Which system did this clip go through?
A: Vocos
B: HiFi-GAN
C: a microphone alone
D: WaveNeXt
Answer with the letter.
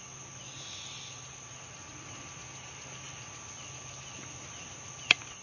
C